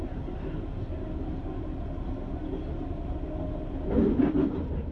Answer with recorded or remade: recorded